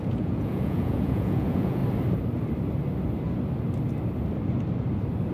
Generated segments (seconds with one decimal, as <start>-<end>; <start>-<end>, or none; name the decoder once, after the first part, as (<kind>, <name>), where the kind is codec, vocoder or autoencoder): 0.0-1.8 (vocoder, Vocos)